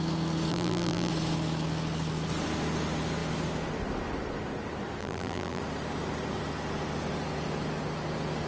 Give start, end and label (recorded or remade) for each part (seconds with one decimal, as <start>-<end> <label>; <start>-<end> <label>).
0.0-0.5 recorded; 0.5-1.1 remade; 1.1-5.0 recorded; 5.0-5.6 remade; 5.6-8.5 recorded